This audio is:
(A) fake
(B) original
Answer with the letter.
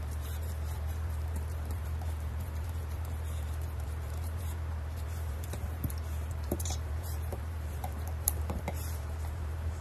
A